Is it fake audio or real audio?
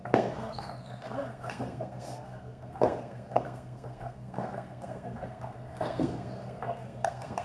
fake